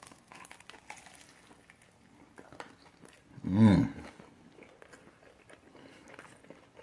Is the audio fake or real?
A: real